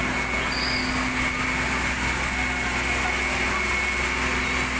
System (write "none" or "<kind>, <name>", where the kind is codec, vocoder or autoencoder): none